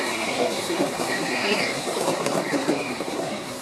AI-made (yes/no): yes